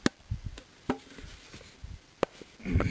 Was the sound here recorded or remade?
recorded